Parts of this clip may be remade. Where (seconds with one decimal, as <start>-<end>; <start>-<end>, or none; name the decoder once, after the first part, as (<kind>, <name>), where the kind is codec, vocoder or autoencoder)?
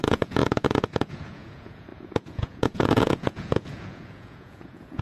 0.0-5.0 (vocoder, Vocos)